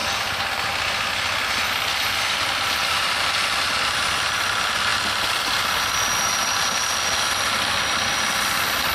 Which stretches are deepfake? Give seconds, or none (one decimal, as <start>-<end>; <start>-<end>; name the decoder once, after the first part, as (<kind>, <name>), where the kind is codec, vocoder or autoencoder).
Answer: none